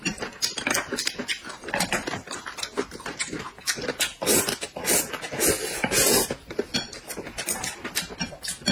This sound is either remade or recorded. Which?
recorded